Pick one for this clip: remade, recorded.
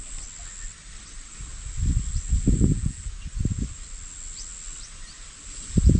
recorded